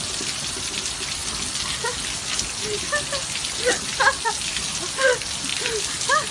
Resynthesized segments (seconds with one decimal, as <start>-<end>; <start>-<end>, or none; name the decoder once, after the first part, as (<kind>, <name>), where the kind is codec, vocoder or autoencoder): none